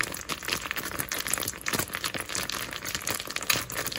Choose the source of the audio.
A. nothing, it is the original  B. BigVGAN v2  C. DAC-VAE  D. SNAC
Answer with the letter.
A